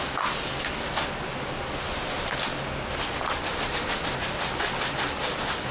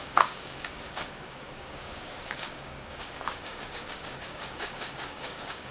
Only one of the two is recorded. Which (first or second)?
first